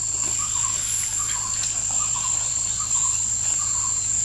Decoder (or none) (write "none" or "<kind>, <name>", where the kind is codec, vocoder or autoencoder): none